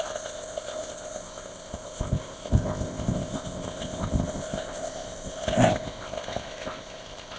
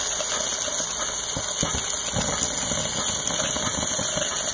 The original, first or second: second